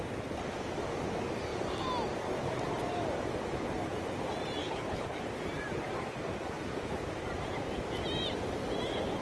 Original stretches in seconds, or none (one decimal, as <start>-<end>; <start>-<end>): 0.0-4.6; 5.2-9.2